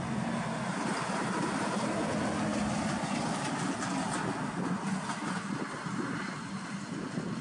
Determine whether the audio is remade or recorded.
recorded